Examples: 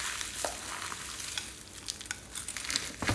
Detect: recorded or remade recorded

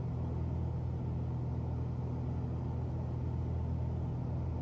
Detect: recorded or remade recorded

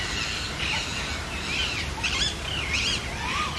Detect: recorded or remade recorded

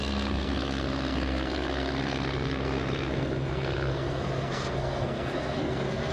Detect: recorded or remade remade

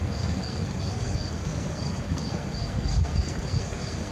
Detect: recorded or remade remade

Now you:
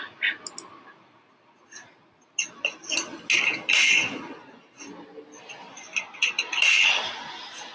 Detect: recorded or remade recorded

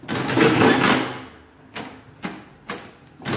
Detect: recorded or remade recorded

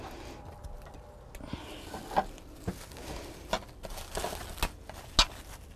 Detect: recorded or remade recorded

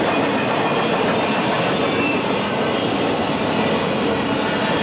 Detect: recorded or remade recorded